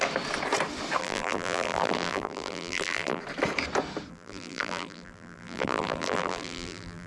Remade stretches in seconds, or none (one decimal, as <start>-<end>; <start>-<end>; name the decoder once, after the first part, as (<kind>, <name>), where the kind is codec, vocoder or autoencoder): 1.0-3.2 (vocoder, BigVGAN v2); 4.1-7.1